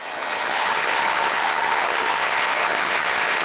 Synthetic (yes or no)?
yes